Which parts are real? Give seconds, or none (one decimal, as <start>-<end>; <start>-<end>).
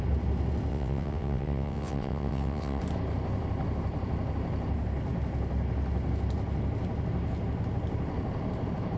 0.0-0.7; 2.8-9.0